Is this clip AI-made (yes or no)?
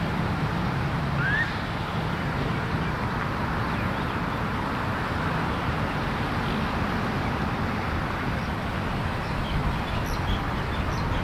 no